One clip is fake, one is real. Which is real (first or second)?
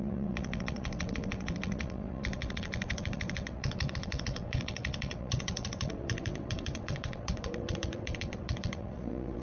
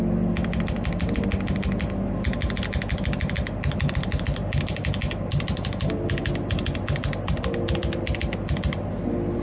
second